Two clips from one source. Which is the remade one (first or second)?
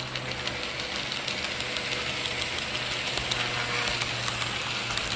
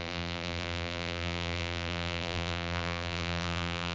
second